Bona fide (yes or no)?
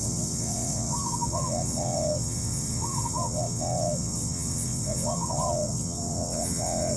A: no